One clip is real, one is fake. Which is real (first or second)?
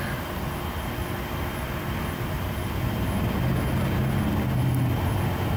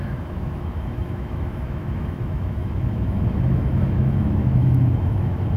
first